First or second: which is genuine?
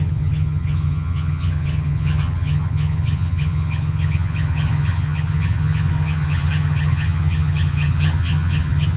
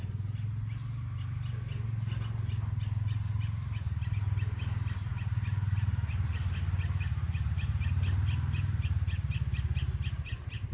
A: second